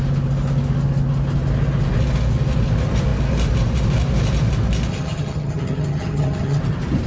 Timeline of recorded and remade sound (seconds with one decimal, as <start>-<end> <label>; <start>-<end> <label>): 0.0-4.9 recorded; 4.9-6.6 remade; 6.6-7.1 recorded